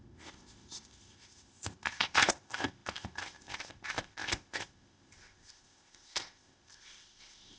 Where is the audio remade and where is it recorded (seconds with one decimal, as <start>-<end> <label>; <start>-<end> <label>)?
0.0-7.6 remade